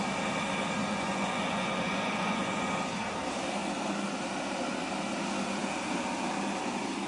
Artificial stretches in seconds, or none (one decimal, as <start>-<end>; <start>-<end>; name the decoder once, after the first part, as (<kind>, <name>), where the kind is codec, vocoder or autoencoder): 0.8-2.7 (vocoder, Vocos)